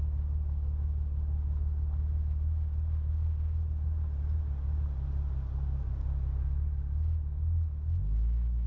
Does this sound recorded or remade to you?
recorded